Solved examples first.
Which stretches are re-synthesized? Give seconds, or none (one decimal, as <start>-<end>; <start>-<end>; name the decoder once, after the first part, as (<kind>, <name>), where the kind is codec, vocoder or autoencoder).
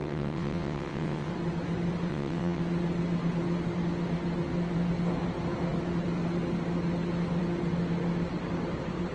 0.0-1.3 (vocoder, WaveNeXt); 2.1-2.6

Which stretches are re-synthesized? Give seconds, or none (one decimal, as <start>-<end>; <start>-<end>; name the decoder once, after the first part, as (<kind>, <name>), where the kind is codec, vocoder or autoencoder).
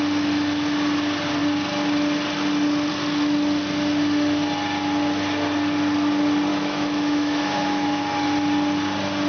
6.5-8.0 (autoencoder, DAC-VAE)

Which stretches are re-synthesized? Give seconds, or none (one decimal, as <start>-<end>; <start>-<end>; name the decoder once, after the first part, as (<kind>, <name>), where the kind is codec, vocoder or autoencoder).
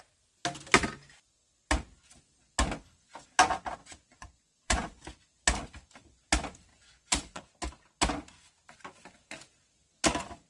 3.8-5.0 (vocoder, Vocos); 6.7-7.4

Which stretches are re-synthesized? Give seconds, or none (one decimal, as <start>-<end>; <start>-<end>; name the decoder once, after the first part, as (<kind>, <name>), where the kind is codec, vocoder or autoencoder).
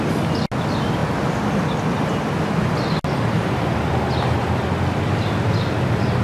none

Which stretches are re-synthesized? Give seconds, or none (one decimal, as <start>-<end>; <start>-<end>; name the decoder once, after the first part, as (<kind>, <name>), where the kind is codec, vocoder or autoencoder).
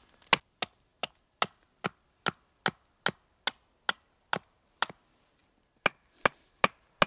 none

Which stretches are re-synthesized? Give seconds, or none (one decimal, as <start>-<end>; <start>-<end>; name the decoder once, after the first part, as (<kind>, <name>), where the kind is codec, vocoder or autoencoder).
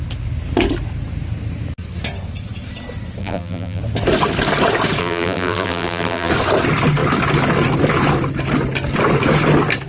3.2-3.8 (vocoder, BigVGAN v2); 5.0-6.3